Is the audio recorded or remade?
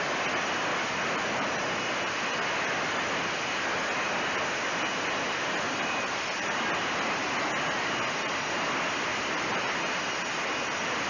recorded